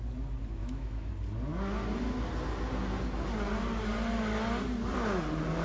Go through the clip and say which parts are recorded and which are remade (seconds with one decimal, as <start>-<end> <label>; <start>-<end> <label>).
0.0-0.6 recorded; 0.6-1.1 remade; 1.1-5.6 recorded